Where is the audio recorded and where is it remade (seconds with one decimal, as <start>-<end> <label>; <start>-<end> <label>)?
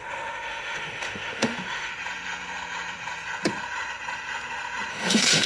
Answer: 0.0-1.9 remade; 1.9-4.9 recorded; 4.9-5.5 remade